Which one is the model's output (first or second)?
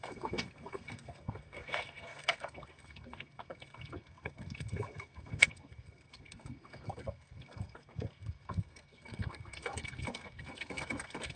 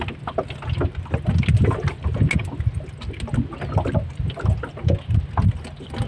first